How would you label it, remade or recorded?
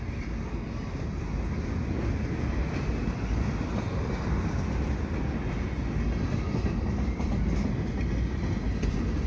recorded